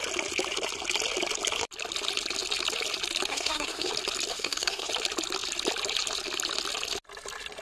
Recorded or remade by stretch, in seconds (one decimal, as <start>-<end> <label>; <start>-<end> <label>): 0.0-3.3 recorded; 3.3-3.9 remade; 3.9-4.3 recorded; 4.3-4.9 remade; 4.9-7.6 recorded